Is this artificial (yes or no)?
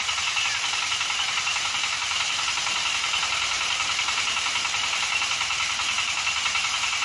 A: no